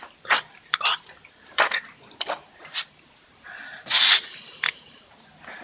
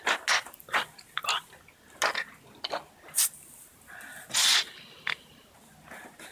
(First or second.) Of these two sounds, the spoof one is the first